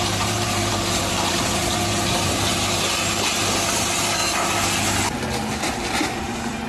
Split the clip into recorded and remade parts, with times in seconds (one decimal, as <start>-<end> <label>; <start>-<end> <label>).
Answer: 0.0-4.2 remade; 4.2-5.6 recorded; 5.6-6.7 remade